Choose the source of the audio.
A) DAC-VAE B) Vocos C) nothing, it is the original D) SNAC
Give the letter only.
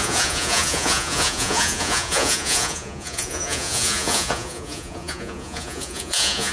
B